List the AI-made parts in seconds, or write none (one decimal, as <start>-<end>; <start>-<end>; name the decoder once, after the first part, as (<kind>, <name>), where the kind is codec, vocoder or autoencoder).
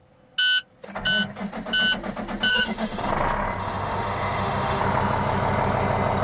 2.5-3.1 (autoencoder, DAC-VAE); 3.6-4.8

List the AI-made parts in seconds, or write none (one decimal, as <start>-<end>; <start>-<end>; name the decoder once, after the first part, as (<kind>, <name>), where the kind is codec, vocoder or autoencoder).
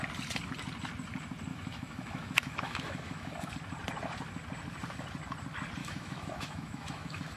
1.5-3.5 (autoencoder, DAC-VAE); 5.8-7.4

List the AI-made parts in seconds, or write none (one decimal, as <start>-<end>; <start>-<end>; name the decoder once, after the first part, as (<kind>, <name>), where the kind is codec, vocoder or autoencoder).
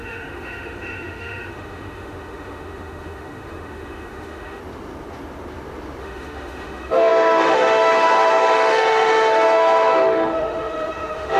0.0-4.6 (autoencoder, DAC-VAE); 6.0-11.4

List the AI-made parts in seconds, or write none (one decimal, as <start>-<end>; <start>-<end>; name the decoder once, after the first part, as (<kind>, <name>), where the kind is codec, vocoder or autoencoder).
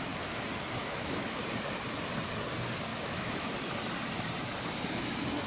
0.8-1.4 (autoencoder, DAC-VAE); 2.9-3.5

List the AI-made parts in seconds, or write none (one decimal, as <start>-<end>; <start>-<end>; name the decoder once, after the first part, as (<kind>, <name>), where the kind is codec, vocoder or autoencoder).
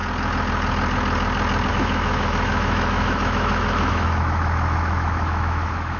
1.7-6.0 (autoencoder, DAC-VAE)